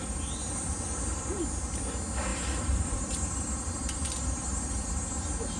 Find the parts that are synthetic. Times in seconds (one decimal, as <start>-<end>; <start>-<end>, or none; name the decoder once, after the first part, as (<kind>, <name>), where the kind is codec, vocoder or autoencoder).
0.4-1.4 (vocoder, BigVGAN v2); 2.3-5.1